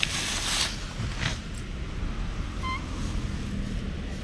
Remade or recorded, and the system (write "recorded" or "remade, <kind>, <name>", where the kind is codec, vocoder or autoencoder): recorded